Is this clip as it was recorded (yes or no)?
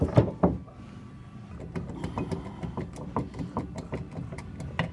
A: yes